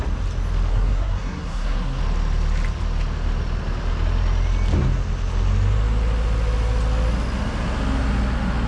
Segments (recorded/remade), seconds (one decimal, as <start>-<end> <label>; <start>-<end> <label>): 0.0-0.7 recorded; 0.7-2.0 remade; 2.0-8.7 recorded